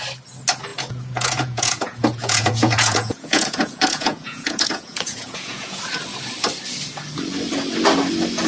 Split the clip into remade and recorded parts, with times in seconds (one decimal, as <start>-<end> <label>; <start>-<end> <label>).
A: 0.0-0.7 recorded; 0.7-5.8 remade; 5.8-8.5 recorded